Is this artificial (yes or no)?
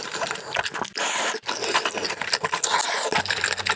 no